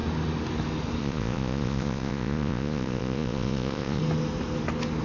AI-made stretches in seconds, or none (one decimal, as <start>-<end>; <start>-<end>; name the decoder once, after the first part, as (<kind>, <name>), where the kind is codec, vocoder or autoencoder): 1.0-4.0 (vocoder, Vocos)